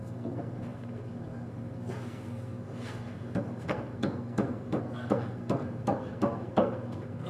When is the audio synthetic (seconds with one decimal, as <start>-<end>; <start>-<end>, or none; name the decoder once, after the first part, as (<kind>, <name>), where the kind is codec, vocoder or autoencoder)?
0.0-7.3 (codec, SNAC)